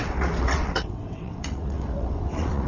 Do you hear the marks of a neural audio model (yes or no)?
yes